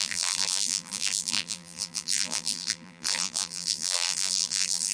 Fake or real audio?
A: fake